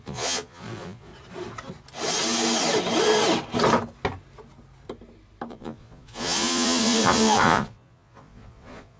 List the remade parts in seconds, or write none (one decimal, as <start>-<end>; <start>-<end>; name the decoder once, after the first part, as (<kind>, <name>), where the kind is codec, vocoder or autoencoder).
0.0-1.1 (vocoder, Vocos); 5.5-9.0